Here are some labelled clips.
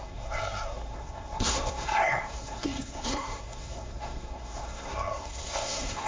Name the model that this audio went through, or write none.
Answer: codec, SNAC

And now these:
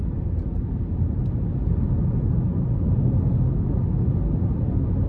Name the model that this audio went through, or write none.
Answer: none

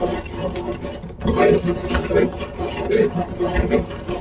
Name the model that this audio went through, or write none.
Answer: vocoder, BigVGAN v2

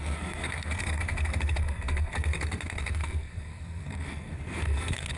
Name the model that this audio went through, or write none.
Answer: codec, SNAC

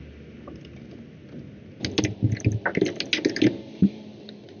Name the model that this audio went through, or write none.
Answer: none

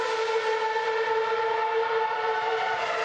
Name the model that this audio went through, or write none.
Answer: none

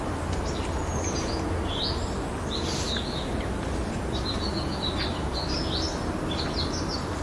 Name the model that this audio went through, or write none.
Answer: none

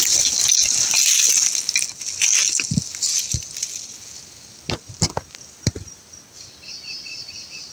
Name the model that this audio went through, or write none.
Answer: none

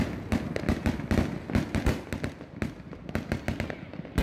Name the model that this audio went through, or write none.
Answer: none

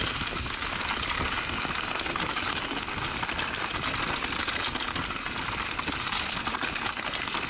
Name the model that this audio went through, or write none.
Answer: none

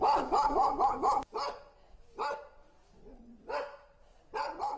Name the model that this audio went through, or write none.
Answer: none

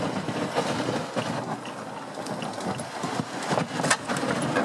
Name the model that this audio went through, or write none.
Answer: none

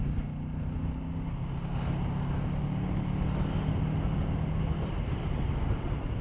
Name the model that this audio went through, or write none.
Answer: none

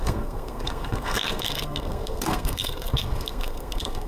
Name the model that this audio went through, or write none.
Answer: codec, SNAC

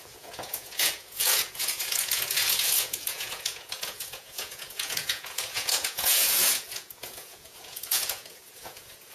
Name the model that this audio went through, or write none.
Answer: vocoder, Vocos